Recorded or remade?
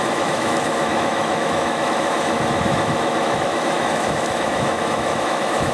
remade